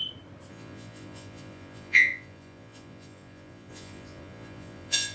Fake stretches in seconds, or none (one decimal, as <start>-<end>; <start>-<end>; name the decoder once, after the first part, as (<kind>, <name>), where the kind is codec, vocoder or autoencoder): 0.5-5.1 (vocoder, Vocos)